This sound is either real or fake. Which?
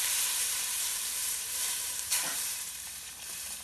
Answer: fake